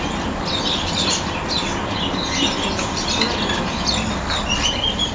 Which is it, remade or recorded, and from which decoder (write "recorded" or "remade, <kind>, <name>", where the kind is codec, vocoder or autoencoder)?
recorded